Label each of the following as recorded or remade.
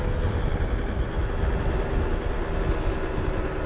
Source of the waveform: recorded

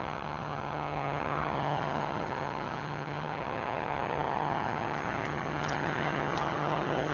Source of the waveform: remade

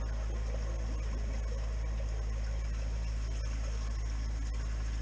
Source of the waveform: recorded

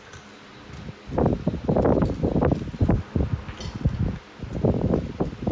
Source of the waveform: recorded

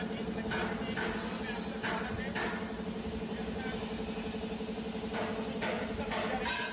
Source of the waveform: recorded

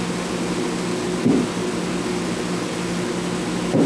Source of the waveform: recorded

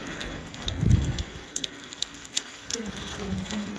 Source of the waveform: remade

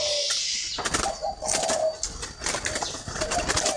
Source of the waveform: recorded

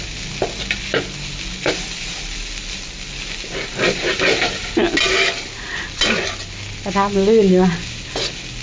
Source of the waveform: recorded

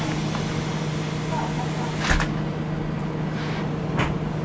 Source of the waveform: recorded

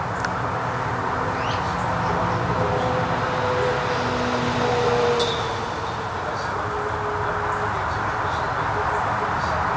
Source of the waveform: recorded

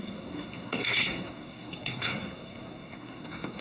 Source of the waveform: remade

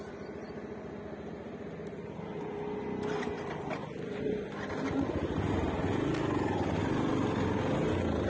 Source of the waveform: recorded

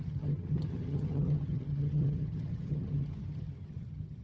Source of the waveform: remade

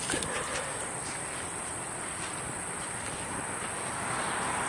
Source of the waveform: recorded